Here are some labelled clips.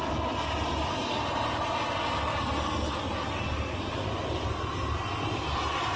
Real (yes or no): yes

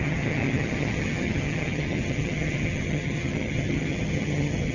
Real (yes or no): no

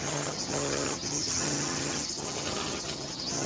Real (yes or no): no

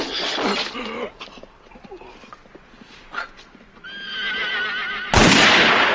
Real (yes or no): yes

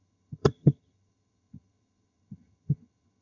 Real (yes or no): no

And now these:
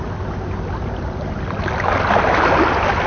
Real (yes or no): yes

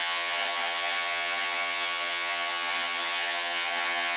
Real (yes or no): no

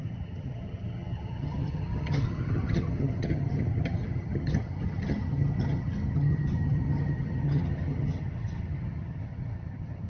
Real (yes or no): no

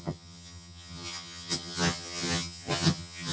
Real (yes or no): no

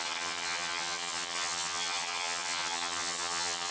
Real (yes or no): no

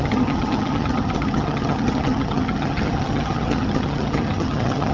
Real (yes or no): no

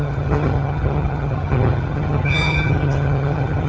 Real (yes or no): no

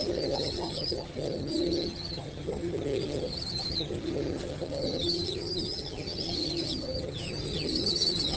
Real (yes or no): no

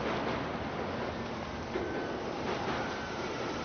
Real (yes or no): yes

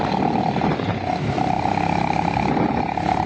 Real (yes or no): yes